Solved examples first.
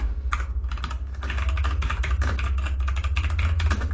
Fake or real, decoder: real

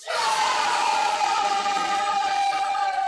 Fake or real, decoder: fake, vocoder, Vocos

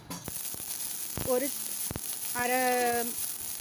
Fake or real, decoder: real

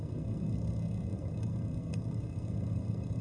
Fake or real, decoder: fake, codec, SNAC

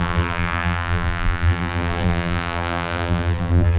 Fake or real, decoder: fake, vocoder, BigVGAN v2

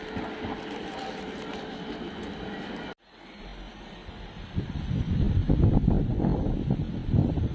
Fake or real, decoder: real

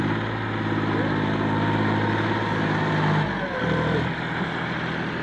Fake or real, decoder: real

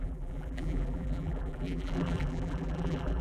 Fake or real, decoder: fake, vocoder, BigVGAN v2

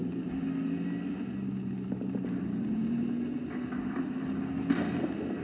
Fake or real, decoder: real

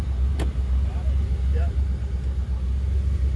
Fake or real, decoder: real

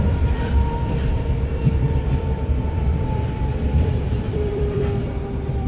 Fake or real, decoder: fake, vocoder, BigVGAN v2